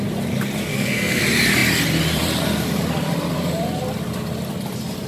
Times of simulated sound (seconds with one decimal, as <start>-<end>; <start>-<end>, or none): 0.7-1.2